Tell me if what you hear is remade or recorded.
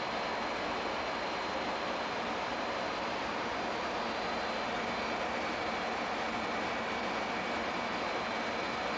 recorded